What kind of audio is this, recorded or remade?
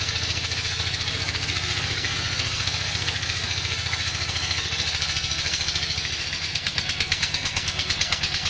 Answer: remade